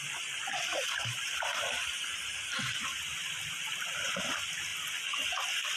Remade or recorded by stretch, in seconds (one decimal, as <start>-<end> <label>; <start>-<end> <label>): 0.0-0.7 recorded; 0.7-4.2 remade; 4.2-5.8 recorded